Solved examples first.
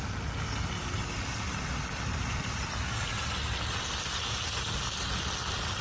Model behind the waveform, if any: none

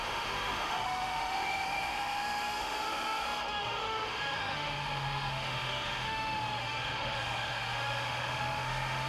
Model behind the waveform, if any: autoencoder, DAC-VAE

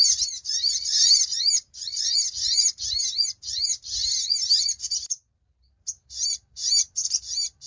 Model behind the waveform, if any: vocoder, BigVGAN v2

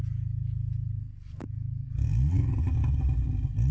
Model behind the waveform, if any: none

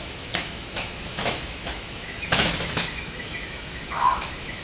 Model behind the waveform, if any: autoencoder, DAC-VAE